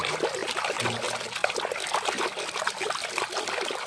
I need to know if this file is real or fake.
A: real